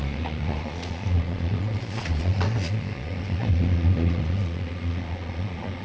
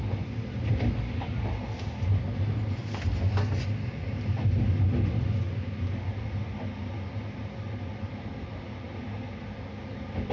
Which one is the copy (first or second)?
first